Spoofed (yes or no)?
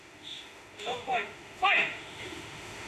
yes